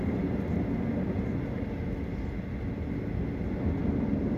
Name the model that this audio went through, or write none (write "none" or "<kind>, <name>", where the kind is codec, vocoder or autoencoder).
none